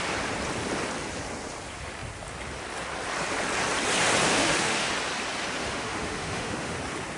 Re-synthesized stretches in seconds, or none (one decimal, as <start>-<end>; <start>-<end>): 4.4-4.9; 5.6-6.8